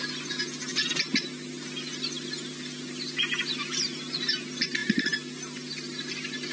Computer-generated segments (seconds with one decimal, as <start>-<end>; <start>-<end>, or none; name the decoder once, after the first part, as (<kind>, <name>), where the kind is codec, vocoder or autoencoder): none